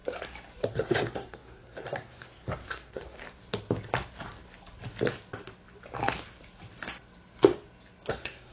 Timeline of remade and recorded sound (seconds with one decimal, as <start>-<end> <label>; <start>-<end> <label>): 0.0-0.7 recorded; 0.7-3.2 remade; 3.2-8.1 recorded; 8.1-8.5 remade